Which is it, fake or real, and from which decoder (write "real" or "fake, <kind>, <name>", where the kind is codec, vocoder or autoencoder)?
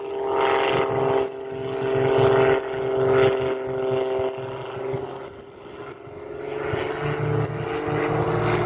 real